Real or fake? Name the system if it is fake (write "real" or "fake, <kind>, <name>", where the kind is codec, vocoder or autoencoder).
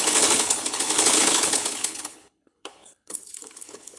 fake, codec, HILCodec